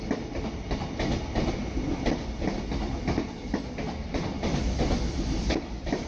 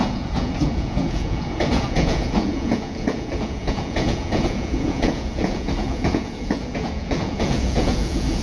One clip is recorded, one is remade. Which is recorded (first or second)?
first